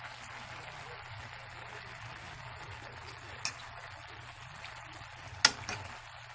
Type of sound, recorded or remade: recorded